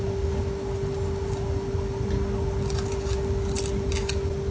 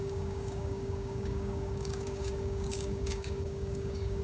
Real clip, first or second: first